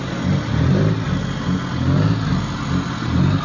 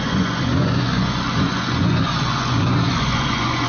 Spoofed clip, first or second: second